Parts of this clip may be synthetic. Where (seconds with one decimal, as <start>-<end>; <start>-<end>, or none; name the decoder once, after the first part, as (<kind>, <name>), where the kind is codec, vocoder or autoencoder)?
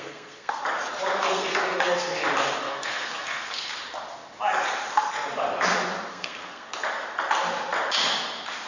0.0-0.6 (codec, SNAC); 1.2-2.1; 2.6-3.7; 6.1-6.7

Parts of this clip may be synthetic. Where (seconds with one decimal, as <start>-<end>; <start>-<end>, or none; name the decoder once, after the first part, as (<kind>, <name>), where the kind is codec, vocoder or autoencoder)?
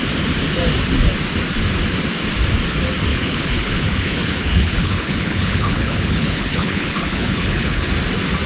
3.1-7.9 (codec, HILCodec)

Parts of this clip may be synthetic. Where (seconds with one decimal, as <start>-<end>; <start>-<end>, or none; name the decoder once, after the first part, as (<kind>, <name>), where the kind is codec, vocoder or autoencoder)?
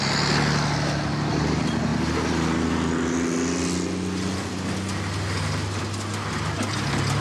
none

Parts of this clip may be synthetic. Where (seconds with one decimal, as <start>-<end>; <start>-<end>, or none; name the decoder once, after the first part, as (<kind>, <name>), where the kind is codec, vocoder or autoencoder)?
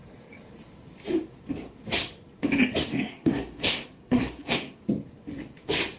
2.9-4.8 (codec, SNAC)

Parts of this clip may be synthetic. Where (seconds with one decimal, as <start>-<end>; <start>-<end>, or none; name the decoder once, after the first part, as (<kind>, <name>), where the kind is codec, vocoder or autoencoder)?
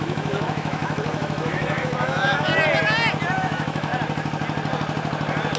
0.0-2.5 (autoencoder, DAC-VAE); 3.4-3.9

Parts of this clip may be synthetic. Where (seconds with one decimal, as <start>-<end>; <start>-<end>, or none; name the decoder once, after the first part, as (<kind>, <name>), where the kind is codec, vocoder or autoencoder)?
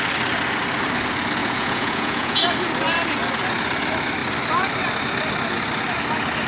1.4-2.4 (vocoder, Vocos)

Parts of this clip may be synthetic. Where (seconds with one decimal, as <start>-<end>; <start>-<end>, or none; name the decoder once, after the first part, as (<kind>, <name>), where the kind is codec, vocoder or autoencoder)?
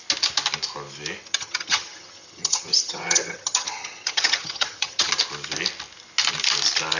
1.2-5.1 (vocoder, HiFi-GAN)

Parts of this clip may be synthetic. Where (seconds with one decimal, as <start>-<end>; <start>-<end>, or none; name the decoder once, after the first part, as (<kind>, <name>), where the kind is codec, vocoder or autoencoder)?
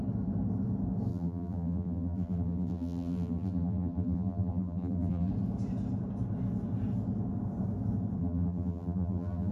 1.1-5.3 (vocoder, BigVGAN v2); 8.2-9.5